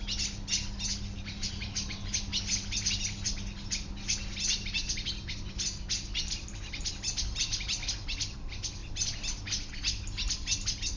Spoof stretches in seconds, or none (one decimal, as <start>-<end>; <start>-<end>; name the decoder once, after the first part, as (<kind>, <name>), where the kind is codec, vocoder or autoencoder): none